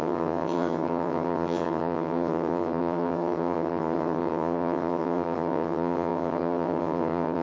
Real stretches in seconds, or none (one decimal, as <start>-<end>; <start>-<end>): none